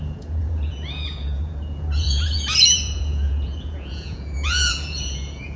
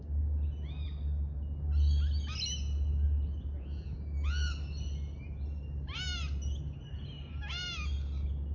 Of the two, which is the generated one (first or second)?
first